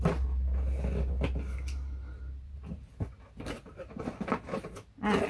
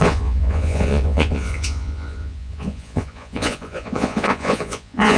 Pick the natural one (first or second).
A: first